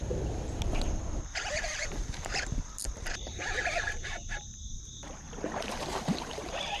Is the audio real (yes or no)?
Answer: no